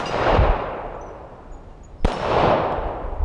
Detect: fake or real real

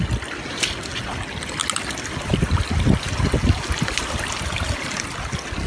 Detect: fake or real real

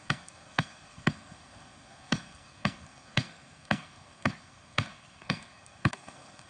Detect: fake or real fake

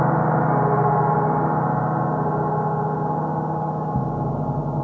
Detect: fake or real real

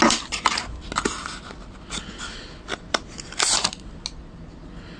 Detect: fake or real real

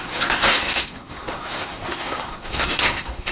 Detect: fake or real fake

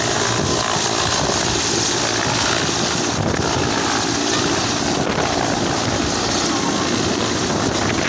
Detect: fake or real real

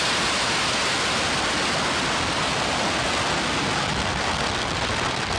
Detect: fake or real real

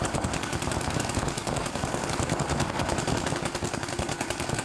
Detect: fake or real fake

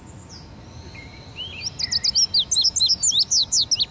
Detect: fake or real real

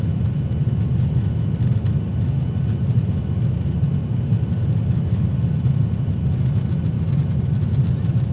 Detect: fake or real real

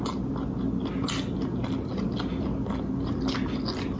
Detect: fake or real real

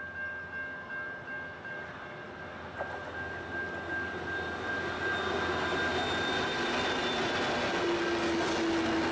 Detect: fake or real real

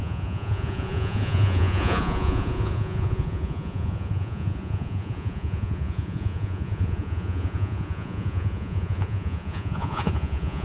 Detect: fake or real fake